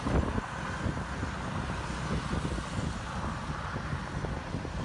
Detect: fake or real real